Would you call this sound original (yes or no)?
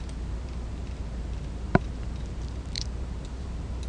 no